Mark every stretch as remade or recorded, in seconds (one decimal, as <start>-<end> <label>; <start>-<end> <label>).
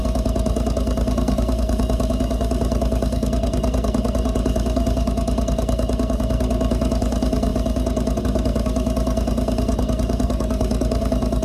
0.0-11.4 remade